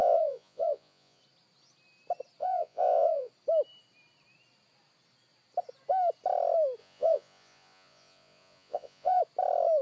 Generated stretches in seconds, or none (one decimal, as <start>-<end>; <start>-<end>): 0.0-1.2; 2.4-3.3; 6.8-9.2

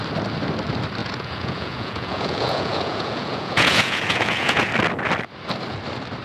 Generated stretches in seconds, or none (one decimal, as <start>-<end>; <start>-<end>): 1.0-4.7

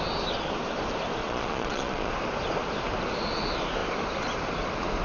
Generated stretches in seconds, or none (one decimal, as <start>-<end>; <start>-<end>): 1.2-2.1

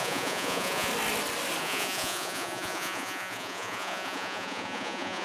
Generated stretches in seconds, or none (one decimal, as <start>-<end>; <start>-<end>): 0.0-0.9; 1.6-5.2